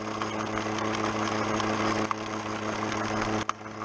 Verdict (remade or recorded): recorded